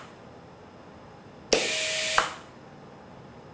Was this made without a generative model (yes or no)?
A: yes